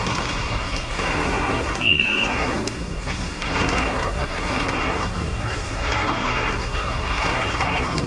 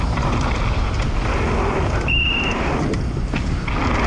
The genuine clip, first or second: second